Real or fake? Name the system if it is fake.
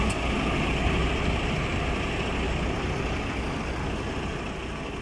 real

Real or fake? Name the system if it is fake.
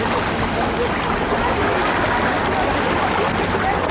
real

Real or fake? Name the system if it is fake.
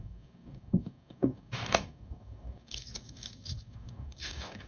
fake, codec, DAC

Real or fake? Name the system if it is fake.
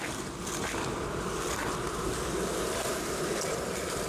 fake, vocoder, BigVGAN v2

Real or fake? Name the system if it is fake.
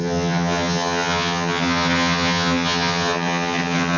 fake, vocoder, HiFi-GAN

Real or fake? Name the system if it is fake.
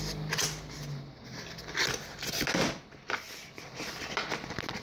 real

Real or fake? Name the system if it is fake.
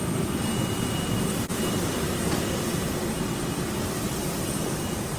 fake, vocoder, BigVGAN v2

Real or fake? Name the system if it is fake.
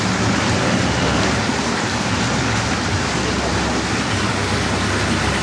real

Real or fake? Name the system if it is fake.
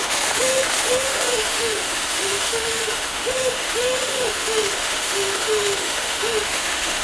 fake, autoencoder, DAC-VAE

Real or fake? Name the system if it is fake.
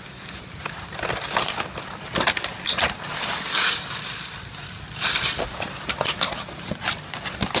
real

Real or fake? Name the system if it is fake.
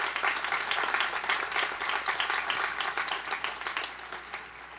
real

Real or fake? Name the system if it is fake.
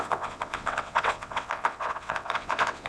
fake, vocoder, WaveNeXt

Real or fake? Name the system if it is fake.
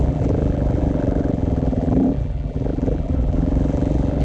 fake, vocoder, BigVGAN v2